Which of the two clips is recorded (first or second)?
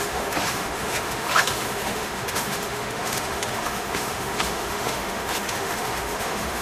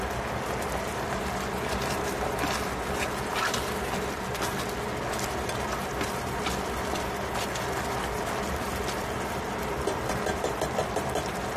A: second